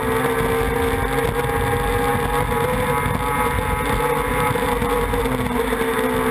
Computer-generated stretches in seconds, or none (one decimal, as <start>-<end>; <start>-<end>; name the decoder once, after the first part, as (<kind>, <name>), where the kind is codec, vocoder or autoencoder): none